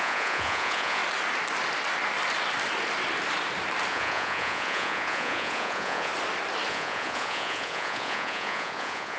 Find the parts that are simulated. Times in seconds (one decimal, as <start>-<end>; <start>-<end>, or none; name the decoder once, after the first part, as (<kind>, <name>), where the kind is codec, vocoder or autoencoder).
0.0-1.0 (vocoder, Vocos); 3.9-6.1; 6.7-9.2